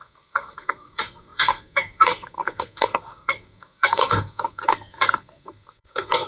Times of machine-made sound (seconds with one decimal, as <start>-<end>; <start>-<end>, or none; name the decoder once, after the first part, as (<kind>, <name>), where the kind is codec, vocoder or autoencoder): 0.0-6.3 (codec, SNAC)